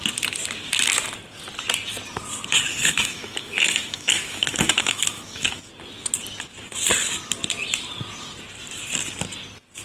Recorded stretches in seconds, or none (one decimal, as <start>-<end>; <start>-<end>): 0.0-2.7; 5.7-9.8